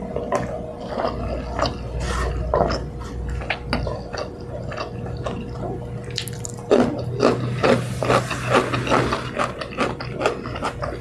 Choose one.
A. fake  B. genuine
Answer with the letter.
B